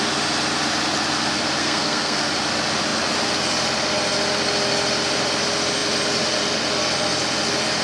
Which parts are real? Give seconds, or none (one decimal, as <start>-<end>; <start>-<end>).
0.0-1.6; 2.3-7.8